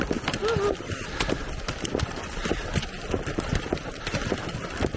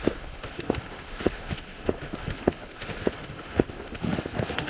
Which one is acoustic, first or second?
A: first